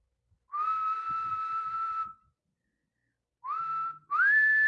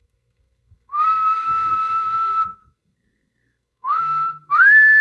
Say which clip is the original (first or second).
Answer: first